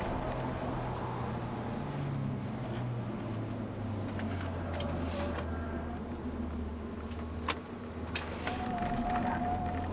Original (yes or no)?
yes